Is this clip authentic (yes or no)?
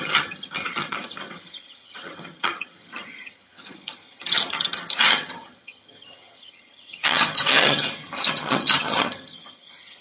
no